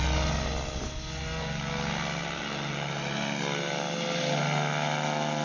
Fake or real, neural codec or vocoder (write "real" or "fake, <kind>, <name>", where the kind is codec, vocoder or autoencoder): real